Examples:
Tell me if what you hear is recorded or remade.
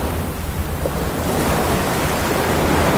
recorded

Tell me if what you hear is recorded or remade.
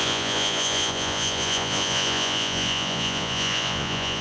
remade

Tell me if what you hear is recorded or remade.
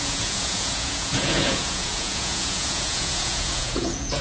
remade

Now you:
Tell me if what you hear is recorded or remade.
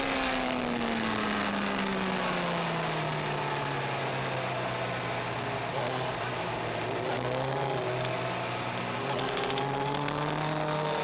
recorded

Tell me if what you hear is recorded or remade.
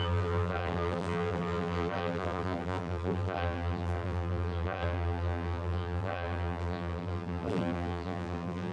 remade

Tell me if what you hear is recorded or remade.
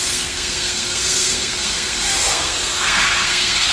remade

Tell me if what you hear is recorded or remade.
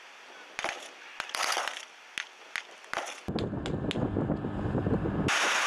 recorded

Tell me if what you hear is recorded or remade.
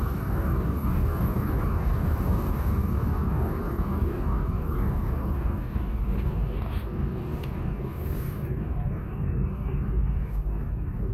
remade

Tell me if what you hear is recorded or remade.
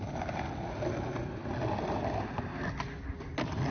recorded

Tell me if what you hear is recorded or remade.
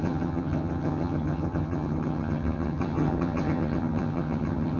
remade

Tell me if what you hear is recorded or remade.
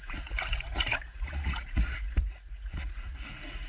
remade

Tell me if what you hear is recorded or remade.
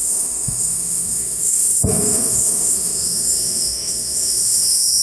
remade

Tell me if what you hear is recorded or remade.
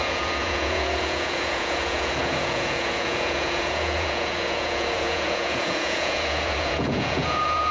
remade